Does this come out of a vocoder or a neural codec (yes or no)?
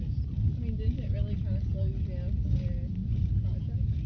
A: no